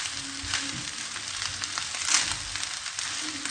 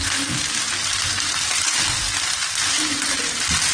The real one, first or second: first